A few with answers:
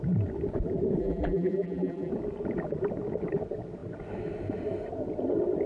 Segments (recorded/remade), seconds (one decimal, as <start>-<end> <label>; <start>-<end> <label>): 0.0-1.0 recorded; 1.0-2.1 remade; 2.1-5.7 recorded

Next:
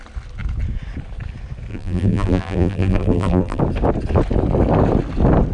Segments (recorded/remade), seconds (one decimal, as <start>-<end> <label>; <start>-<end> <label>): 0.0-1.7 recorded; 1.7-3.6 remade; 3.6-5.5 recorded

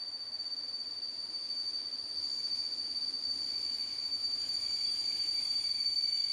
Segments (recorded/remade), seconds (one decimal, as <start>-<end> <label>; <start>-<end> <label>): 0.0-4.2 recorded; 4.2-5.7 remade; 5.7-6.3 recorded

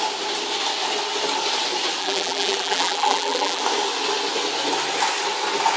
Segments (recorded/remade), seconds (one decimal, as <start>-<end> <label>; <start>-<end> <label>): 0.0-2.0 recorded; 2.0-3.6 remade; 3.6-5.8 recorded

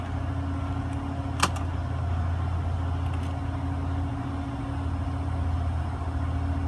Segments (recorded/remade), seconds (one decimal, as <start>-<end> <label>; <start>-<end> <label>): 0.0-6.7 recorded